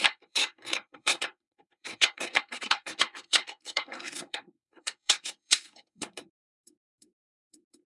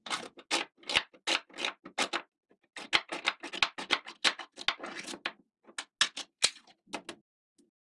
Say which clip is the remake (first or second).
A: first